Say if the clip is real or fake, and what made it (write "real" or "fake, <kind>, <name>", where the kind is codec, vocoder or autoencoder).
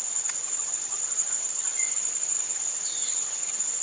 fake, vocoder, HiFi-GAN